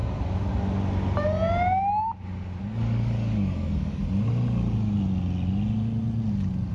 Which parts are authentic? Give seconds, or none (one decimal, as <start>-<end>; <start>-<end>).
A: 0.0-2.6; 4.0-6.7